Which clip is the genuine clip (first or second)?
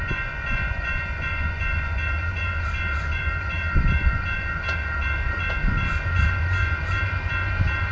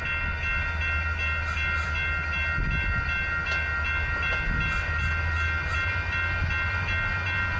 second